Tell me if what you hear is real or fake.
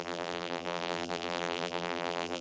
fake